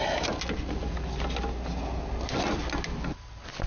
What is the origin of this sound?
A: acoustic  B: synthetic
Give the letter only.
A